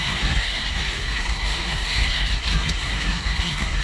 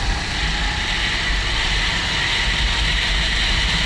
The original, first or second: second